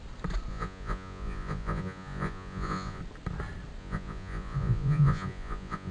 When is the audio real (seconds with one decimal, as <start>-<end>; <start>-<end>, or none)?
0.0-0.5; 3.0-3.8